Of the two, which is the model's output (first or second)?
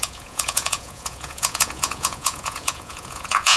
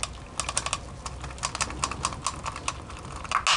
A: first